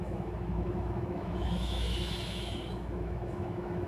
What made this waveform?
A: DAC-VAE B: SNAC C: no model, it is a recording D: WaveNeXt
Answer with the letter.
A